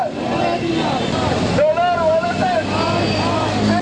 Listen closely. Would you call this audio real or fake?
real